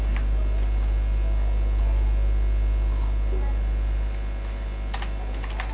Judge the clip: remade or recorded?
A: recorded